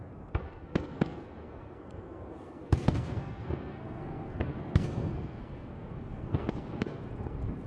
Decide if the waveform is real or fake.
fake